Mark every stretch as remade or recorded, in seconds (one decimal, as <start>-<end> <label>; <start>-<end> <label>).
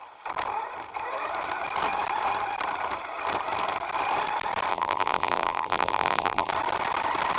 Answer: 0.0-4.7 recorded; 4.7-6.5 remade; 6.5-7.4 recorded